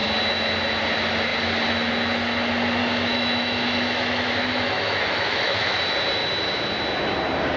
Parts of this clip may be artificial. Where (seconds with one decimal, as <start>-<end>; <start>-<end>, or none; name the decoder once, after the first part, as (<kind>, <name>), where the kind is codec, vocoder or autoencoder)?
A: 2.8-5.8 (autoencoder, DAC-VAE)